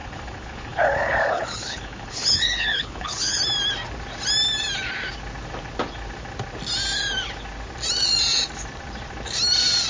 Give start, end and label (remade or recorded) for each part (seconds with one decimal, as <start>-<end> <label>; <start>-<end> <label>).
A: 0.0-3.4 remade; 3.4-9.9 recorded